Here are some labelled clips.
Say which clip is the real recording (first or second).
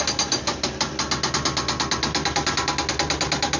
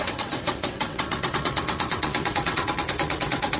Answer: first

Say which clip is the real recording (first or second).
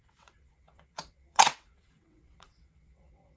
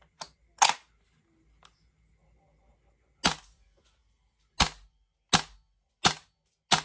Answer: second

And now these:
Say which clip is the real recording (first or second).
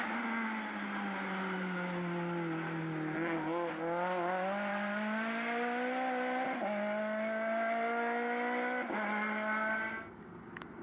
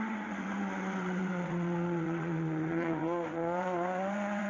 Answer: first